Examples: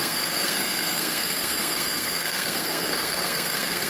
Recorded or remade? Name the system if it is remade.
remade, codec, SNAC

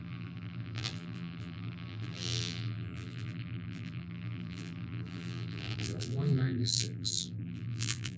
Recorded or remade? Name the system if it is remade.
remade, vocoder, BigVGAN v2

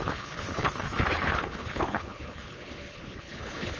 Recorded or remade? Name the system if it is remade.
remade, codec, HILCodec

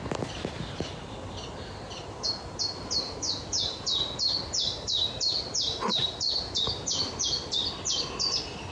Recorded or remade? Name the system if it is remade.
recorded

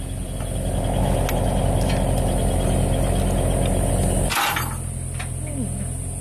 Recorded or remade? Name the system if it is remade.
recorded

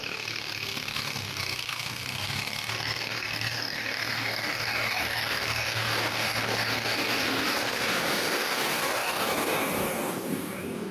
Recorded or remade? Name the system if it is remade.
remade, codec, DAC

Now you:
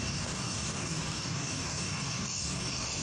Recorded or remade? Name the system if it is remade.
remade, codec, DAC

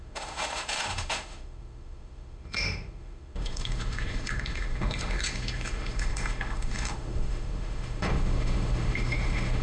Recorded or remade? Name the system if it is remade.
remade, autoencoder, DAC-VAE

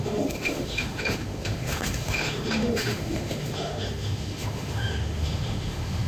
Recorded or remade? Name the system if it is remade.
remade, autoencoder, DAC-VAE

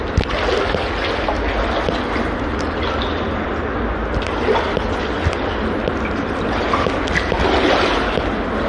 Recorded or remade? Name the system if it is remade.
recorded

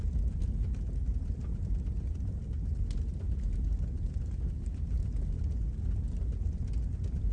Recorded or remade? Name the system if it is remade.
recorded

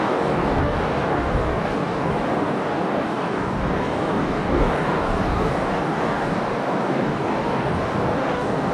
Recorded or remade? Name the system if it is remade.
remade, codec, DAC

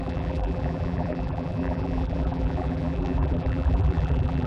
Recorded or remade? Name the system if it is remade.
remade, vocoder, BigVGAN v2